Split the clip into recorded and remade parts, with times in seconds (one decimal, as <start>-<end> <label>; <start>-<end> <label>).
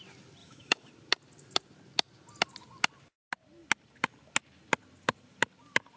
0.0-0.4 recorded; 0.4-0.9 remade; 0.9-6.0 recorded